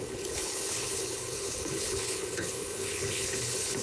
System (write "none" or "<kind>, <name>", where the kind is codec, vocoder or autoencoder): codec, HILCodec